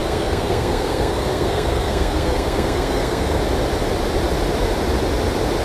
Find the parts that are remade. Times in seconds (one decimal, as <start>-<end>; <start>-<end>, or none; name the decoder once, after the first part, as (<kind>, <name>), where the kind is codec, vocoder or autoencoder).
0.0-3.4 (codec, SNAC)